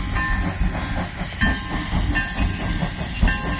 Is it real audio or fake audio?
real